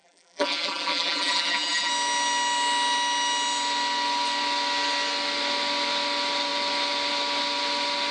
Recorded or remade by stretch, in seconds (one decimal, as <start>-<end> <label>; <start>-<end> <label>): 0.0-1.9 remade; 1.9-8.1 recorded